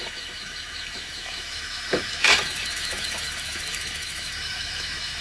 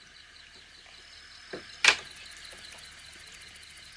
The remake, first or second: first